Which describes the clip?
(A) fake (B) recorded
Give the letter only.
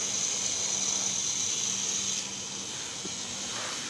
B